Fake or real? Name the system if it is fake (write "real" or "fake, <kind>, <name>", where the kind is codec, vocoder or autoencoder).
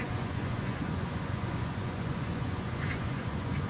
fake, vocoder, Vocos